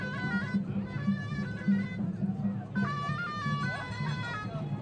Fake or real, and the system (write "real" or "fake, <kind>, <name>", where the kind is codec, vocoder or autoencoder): real